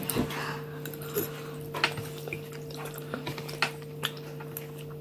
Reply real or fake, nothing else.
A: real